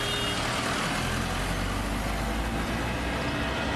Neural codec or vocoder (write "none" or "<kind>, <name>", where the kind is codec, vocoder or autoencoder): none